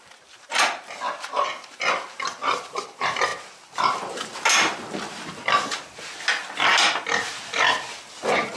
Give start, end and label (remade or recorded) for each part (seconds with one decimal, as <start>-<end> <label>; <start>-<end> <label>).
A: 0.0-8.6 recorded